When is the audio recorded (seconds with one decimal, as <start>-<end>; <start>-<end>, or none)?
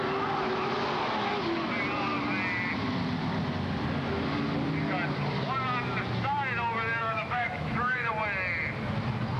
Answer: 0.0-7.0; 8.1-9.4